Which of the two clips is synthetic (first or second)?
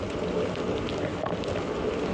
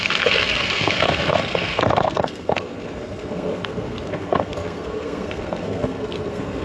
second